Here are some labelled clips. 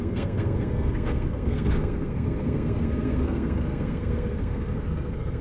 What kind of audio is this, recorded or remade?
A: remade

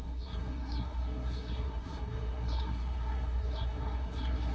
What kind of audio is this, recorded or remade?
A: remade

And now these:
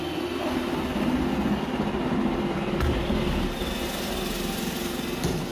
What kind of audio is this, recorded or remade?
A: recorded